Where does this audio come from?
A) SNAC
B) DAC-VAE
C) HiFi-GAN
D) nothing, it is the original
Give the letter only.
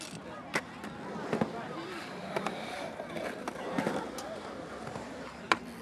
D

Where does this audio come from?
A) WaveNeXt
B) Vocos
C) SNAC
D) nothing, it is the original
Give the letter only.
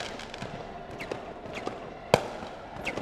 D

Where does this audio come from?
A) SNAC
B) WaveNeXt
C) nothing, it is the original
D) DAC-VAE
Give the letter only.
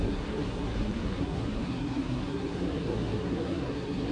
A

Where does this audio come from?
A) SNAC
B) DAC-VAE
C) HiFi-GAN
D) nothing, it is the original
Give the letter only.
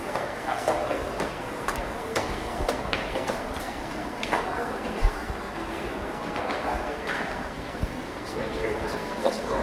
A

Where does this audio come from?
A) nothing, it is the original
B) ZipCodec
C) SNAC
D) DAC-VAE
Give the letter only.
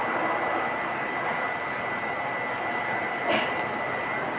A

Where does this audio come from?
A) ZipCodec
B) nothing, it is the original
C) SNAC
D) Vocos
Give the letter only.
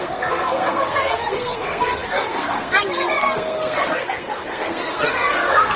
C